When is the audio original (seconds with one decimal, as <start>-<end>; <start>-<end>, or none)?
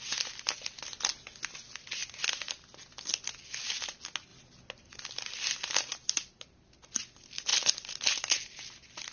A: 0.0-9.1